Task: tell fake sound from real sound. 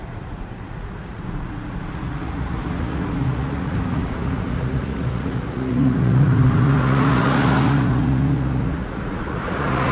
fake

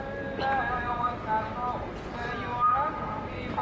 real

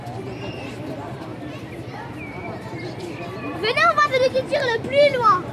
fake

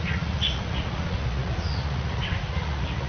fake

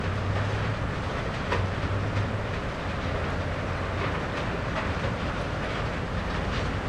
real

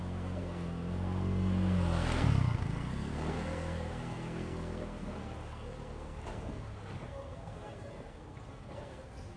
fake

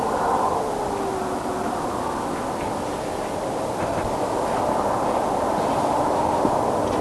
real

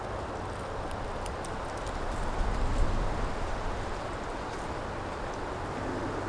real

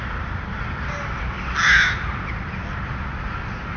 real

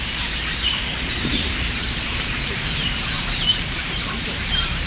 fake